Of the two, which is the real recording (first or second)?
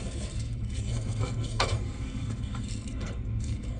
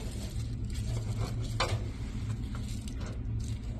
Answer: second